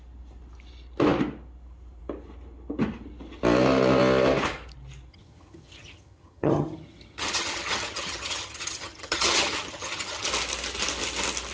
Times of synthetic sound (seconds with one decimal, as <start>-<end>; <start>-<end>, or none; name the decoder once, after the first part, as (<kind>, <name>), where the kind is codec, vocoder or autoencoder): 5.1-10.3 (vocoder, HiFi-GAN)